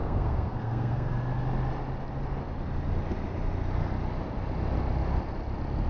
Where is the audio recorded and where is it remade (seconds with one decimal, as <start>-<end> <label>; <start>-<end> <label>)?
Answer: 0.0-1.1 remade; 1.1-5.9 recorded